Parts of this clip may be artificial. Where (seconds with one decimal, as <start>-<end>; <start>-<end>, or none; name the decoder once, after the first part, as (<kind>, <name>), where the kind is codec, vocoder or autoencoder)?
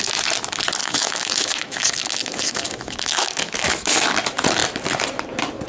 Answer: 0.8-4.1 (autoencoder, DAC-VAE)